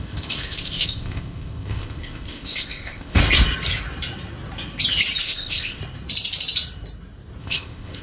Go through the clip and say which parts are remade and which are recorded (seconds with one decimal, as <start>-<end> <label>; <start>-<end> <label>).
0.0-3.2 remade; 3.2-5.2 recorded; 5.2-5.8 remade; 5.8-7.4 recorded; 7.4-8.0 remade